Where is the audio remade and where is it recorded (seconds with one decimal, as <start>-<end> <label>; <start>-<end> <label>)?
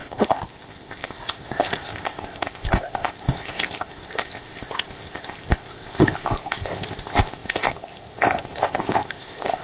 0.0-9.6 remade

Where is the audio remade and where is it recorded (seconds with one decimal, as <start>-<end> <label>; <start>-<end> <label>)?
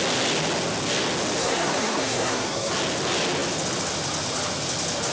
0.0-1.4 recorded; 1.4-2.7 remade; 2.7-5.1 recorded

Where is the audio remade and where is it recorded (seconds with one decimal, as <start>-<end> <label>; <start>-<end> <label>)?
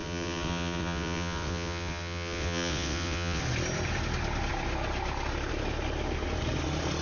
0.0-3.4 remade; 3.4-7.0 recorded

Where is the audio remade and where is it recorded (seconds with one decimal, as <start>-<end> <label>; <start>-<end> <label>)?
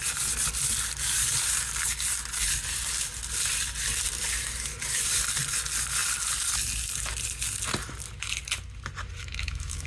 0.0-9.2 recorded; 9.2-9.9 remade